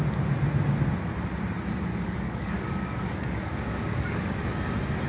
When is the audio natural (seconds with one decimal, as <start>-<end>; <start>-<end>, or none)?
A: 0.0-1.9; 4.5-5.1